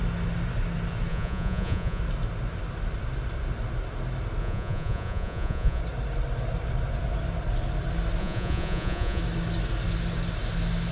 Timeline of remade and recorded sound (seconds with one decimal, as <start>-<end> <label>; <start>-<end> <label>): 0.0-1.1 recorded; 1.1-2.0 remade; 2.0-4.4 recorded; 4.4-5.8 remade; 5.8-8.2 recorded; 8.2-9.2 remade; 9.2-10.9 recorded